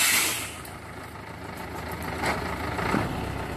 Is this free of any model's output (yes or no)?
yes